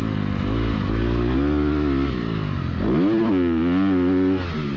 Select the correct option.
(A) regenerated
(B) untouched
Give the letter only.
B